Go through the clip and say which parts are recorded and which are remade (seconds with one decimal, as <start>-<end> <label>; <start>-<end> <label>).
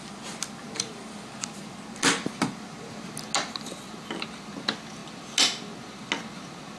0.0-6.8 recorded